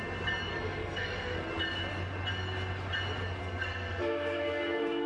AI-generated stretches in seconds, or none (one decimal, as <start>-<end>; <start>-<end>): 0.5-1.5; 3.4-5.1